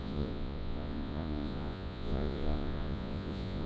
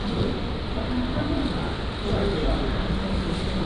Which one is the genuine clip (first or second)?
second